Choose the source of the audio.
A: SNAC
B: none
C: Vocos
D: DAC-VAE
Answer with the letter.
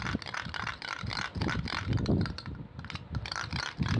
B